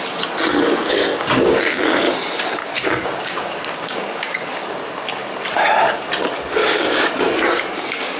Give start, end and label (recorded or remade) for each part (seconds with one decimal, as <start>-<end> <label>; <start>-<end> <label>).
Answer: 0.0-1.1 recorded; 1.1-2.1 remade; 2.1-2.6 recorded; 2.6-4.5 remade; 4.5-6.6 recorded; 6.6-8.2 remade